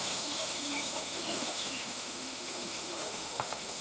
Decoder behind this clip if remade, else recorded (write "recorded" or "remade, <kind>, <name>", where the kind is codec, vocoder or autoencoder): remade, autoencoder, DAC-VAE